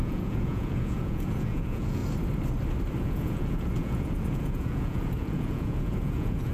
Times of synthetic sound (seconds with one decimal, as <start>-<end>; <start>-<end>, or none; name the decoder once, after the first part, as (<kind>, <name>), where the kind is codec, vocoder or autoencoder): 0.0-2.0 (vocoder, Vocos); 3.0-6.5

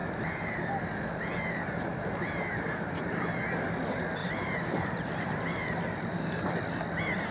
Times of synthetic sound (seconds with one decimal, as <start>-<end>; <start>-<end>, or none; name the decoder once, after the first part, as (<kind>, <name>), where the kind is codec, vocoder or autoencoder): 4.2-6.6 (vocoder, BigVGAN v2)

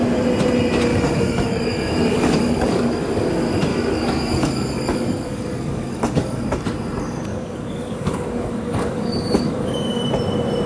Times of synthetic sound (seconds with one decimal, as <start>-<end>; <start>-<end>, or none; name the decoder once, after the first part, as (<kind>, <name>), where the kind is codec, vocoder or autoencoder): 0.9-3.3 (codec, DAC); 3.7-6.5; 7.3-10.0

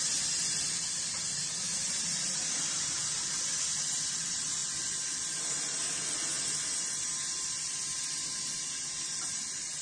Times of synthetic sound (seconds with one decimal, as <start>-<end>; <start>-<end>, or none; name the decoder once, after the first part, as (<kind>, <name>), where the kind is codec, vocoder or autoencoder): none